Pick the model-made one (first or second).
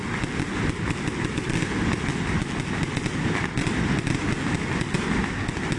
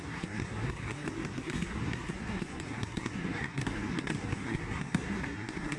second